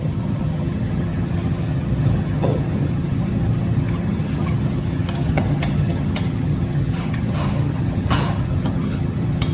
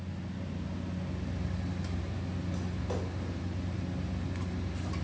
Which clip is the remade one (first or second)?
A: first